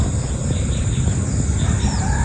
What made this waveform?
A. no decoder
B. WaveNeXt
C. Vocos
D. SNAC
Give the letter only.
A